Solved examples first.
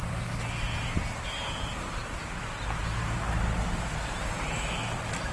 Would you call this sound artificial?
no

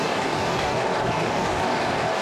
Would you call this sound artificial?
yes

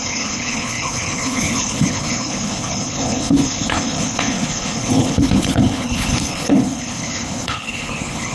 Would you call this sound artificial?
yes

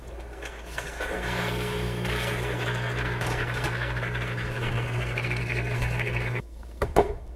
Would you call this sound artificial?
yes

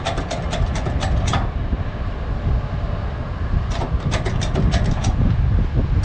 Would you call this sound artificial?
no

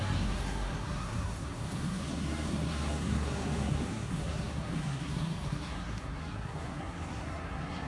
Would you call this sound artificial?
yes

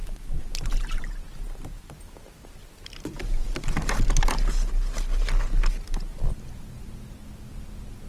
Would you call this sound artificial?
no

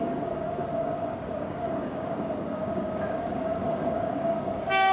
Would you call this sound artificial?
yes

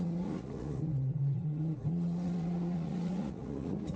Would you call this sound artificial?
yes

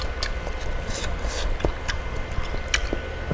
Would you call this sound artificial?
no